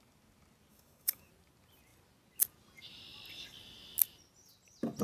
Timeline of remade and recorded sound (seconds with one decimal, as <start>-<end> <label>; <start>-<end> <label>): 0.0-0.7 recorded; 0.7-1.3 remade; 1.3-5.0 recorded